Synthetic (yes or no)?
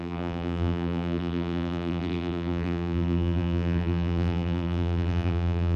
yes